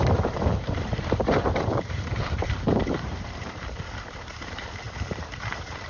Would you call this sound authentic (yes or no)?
no